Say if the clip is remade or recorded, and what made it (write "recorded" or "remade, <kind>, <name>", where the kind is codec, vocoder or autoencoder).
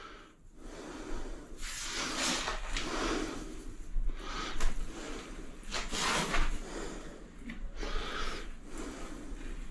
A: recorded